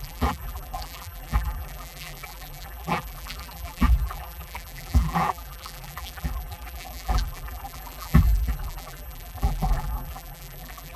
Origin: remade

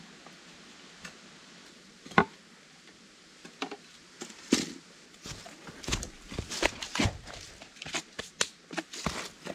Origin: recorded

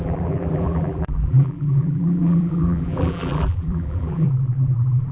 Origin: remade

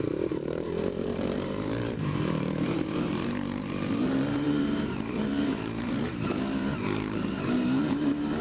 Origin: remade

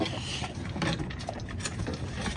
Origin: remade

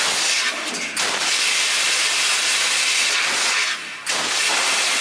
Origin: recorded